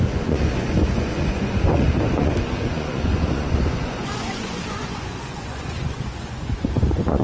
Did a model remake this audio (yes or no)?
yes